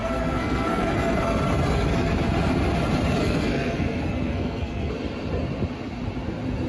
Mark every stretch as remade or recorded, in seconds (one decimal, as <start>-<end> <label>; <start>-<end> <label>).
0.0-1.4 remade; 1.4-3.2 recorded; 3.2-4.9 remade; 4.9-6.7 recorded